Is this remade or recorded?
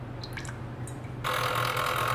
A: recorded